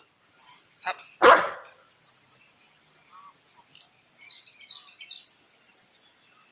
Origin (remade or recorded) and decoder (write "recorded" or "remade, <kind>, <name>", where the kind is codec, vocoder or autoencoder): recorded